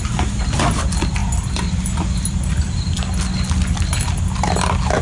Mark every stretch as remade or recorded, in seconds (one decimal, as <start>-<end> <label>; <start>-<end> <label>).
0.0-5.0 recorded

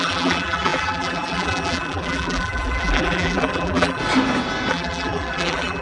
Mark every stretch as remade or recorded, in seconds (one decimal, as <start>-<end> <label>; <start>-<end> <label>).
0.0-4.0 remade; 4.0-4.7 recorded; 4.7-5.8 remade

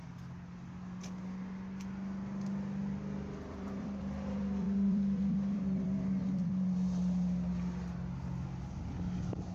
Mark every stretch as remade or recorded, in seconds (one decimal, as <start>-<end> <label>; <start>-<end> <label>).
0.0-2.8 recorded; 2.8-6.5 remade; 6.5-9.5 recorded

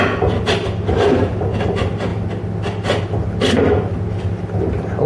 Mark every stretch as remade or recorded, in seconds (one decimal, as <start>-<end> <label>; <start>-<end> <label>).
0.0-5.1 recorded

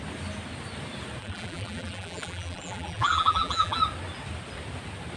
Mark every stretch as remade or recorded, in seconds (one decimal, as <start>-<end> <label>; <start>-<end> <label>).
0.0-1.2 recorded; 1.2-3.8 remade; 3.8-5.2 recorded

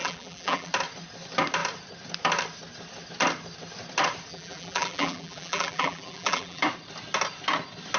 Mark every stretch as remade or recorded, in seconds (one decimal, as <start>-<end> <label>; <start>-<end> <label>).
0.0-0.7 remade; 0.7-4.3 recorded; 4.3-6.6 remade; 6.6-8.0 recorded